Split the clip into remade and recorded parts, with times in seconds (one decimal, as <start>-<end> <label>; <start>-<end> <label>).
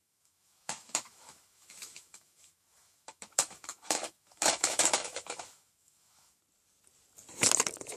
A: 0.0-6.4 remade; 6.4-8.0 recorded